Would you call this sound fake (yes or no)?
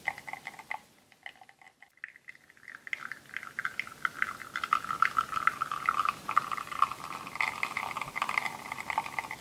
no